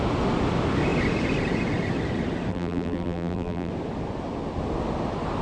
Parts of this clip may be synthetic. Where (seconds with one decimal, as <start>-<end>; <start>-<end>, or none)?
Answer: 2.5-3.7